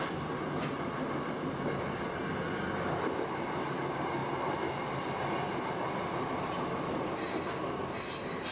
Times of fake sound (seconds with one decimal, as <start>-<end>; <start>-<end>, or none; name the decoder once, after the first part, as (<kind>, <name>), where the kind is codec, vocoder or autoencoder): none